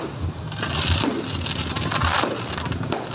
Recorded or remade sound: recorded